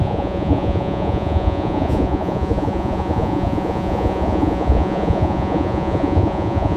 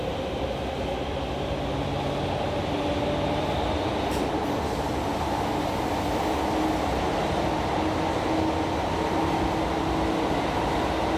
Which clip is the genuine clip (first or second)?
second